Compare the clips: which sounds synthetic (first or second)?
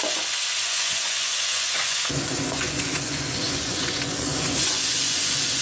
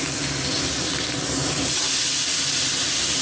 first